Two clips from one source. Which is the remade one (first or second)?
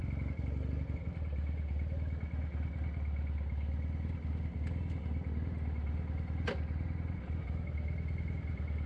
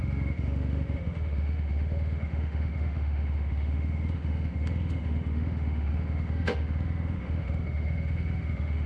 second